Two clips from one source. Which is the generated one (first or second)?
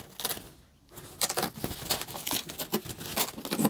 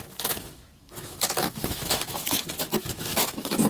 second